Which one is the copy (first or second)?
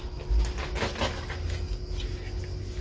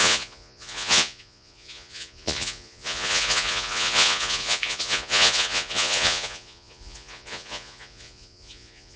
second